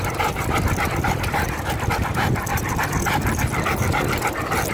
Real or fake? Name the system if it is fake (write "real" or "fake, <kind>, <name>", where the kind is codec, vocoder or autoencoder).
real